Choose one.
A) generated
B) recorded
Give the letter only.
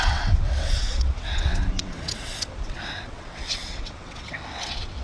A